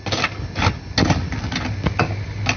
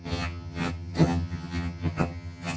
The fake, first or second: second